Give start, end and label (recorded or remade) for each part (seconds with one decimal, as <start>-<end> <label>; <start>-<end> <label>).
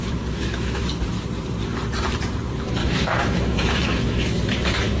0.0-0.8 remade; 0.8-2.8 recorded; 2.8-4.4 remade; 4.4-5.0 recorded